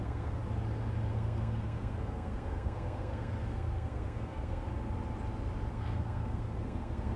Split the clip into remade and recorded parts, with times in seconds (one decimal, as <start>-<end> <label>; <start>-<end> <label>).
0.0-0.4 remade; 0.4-1.1 recorded; 1.1-4.7 remade; 4.7-5.7 recorded; 5.7-7.2 remade

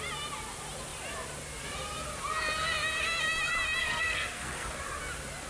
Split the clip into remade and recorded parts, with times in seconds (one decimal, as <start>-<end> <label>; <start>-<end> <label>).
0.0-3.8 recorded; 3.8-4.8 remade; 4.8-5.5 recorded

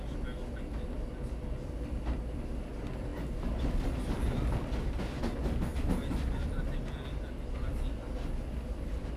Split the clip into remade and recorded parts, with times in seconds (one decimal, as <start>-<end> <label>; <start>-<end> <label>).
0.0-9.2 recorded

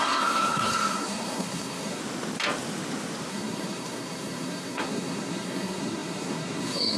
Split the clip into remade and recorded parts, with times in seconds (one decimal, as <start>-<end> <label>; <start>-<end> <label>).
0.0-2.0 remade; 2.0-3.3 recorded; 3.3-7.0 remade

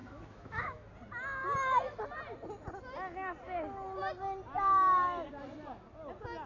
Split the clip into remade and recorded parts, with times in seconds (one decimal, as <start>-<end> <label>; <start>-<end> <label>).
0.0-0.9 remade; 0.9-6.5 recorded

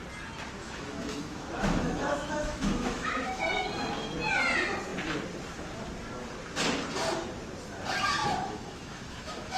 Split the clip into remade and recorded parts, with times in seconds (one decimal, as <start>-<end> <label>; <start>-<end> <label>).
0.0-0.6 recorded; 0.6-3.4 remade; 3.4-8.2 recorded; 8.2-9.6 remade